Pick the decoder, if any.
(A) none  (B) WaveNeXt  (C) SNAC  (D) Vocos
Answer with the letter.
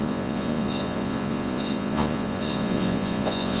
D